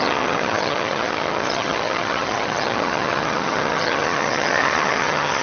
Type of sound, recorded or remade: remade